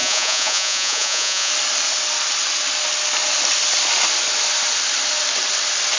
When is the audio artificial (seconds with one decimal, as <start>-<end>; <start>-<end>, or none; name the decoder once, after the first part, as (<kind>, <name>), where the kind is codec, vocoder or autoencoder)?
0.0-1.5 (vocoder, Vocos)